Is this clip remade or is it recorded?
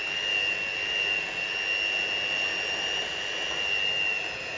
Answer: recorded